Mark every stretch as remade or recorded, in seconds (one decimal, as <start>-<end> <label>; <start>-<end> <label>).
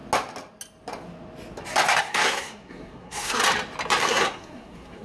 0.0-2.0 recorded; 2.0-3.4 remade; 3.4-4.0 recorded; 4.0-5.0 remade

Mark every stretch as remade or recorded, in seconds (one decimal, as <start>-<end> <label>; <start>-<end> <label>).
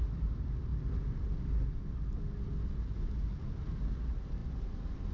0.0-0.7 remade; 0.7-3.6 recorded; 3.6-5.1 remade